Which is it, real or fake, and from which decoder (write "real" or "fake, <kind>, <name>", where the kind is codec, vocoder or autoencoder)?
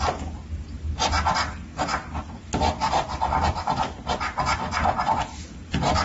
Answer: real